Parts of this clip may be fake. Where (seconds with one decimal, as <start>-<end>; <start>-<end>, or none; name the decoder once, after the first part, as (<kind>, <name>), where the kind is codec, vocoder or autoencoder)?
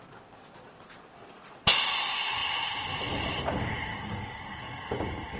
3.9-4.9 (codec, DAC)